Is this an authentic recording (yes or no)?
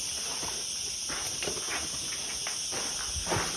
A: yes